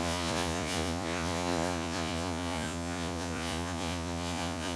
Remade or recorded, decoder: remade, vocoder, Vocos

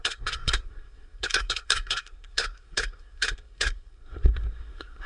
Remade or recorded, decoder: remade, codec, SNAC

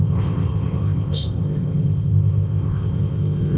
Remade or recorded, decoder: remade, codec, ZipCodec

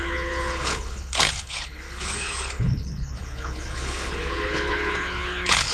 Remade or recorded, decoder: remade, codec, HILCodec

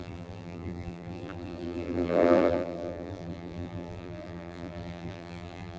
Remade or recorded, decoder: remade, vocoder, BigVGAN v2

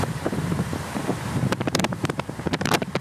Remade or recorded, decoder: remade, vocoder, BigVGAN v2